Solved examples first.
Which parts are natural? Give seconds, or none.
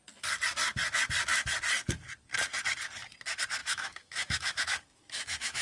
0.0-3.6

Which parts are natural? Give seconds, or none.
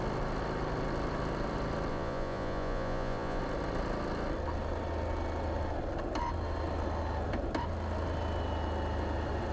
0.0-1.9; 3.4-9.5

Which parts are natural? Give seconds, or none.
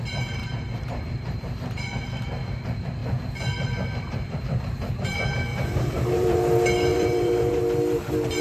0.0-0.4; 1.8-5.5; 6.4-6.9; 7.6-8.4